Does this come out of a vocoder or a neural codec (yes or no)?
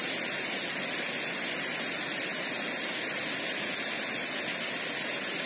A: no